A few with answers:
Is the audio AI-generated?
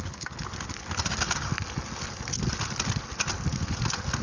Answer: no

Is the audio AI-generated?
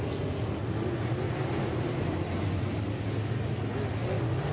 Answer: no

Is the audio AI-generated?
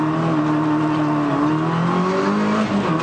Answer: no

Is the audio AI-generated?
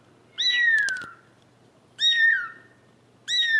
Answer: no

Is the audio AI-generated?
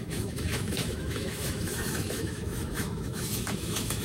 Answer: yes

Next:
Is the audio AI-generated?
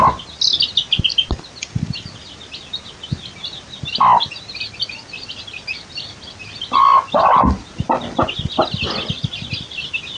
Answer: no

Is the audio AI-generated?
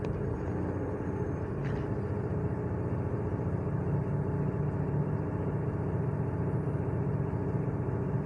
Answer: no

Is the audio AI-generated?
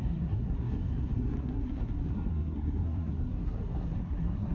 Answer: yes